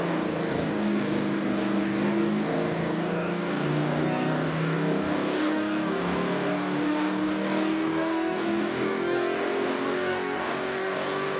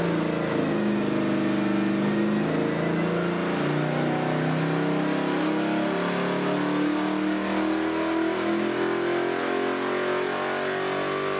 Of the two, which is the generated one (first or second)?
first